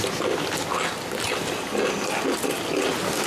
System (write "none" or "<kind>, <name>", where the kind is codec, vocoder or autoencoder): none